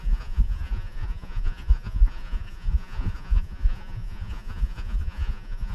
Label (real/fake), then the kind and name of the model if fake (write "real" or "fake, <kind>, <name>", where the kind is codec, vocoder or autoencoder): fake, vocoder, Vocos